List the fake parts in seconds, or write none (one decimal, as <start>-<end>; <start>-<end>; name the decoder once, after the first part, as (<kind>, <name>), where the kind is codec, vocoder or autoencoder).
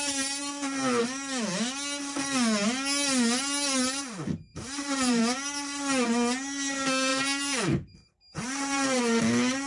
4.5-5.2 (vocoder, BigVGAN v2); 7.1-9.0